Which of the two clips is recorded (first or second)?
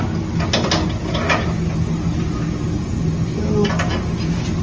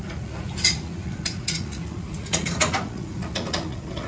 first